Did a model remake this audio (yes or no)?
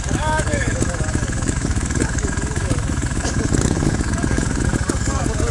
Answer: yes